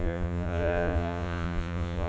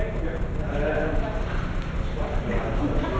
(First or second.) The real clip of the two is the second